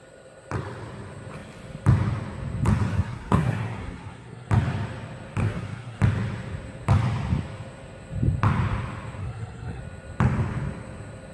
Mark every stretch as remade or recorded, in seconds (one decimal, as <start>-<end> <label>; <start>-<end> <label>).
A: 0.0-2.9 recorded; 2.9-4.5 remade; 4.5-5.4 recorded; 5.4-6.0 remade; 6.0-9.2 recorded; 9.2-9.8 remade; 9.8-11.3 recorded